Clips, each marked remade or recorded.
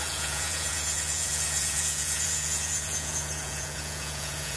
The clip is remade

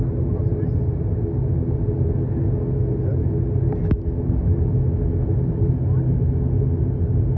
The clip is recorded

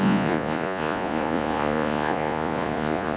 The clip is remade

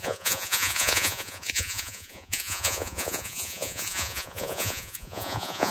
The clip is remade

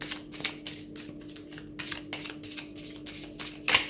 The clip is recorded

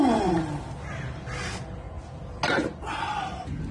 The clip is recorded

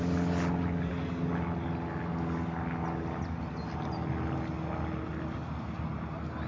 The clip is recorded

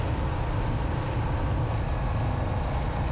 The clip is recorded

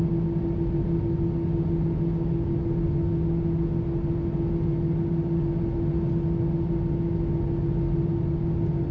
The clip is recorded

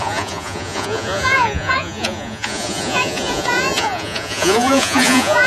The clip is remade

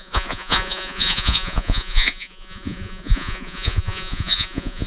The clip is remade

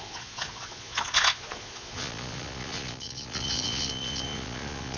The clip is remade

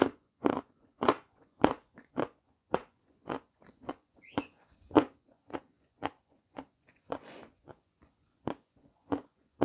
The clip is remade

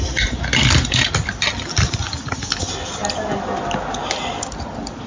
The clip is recorded